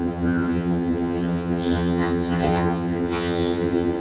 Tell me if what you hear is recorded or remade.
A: remade